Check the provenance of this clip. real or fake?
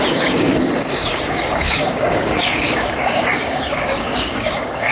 fake